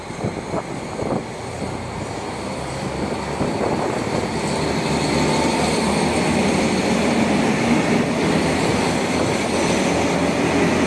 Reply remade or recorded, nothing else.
recorded